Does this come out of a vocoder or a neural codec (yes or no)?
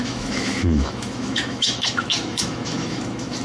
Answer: yes